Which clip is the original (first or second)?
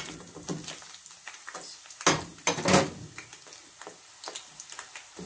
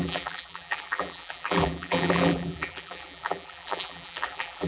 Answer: first